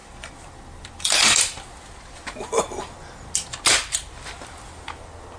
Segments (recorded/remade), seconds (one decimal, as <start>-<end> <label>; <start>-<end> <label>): 0.0-1.6 remade; 1.6-5.4 recorded